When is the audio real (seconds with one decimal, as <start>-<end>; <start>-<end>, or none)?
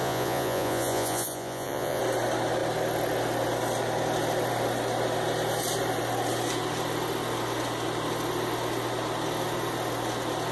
2.0-10.5